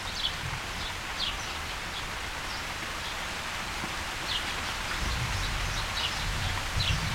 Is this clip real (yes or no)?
yes